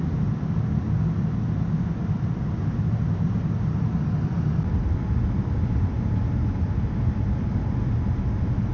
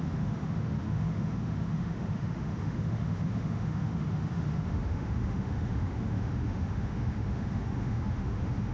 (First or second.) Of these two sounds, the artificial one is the second